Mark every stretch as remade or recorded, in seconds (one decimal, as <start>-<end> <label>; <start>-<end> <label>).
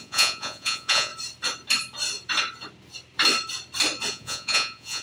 0.0-1.1 remade; 1.1-4.1 recorded; 4.1-5.0 remade